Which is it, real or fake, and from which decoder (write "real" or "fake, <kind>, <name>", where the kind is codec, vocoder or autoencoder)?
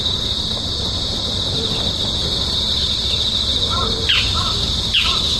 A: real